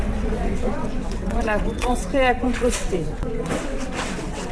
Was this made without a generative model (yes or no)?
no